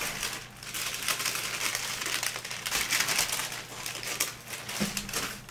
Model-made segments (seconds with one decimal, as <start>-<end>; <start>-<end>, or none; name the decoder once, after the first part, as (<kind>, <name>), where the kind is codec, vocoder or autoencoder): none